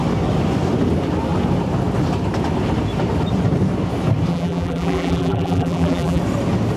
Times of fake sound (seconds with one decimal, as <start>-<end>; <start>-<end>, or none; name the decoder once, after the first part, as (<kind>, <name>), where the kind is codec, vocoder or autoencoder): 4.3-6.2 (vocoder, BigVGAN v2)